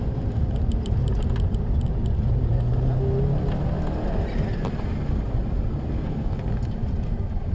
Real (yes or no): yes